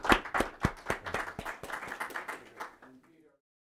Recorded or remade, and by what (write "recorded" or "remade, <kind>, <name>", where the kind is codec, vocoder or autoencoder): recorded